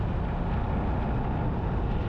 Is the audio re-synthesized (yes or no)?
no